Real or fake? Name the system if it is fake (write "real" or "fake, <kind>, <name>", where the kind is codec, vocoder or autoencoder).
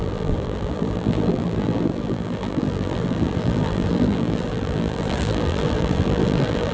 fake, vocoder, BigVGAN v2